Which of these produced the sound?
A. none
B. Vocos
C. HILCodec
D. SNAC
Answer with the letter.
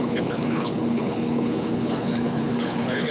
C